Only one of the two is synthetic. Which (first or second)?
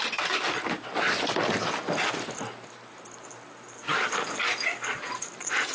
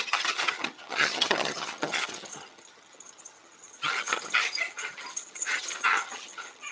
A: second